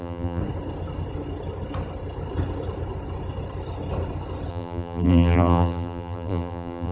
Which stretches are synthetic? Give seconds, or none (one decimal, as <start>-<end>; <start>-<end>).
0.0-0.4; 4.5-6.9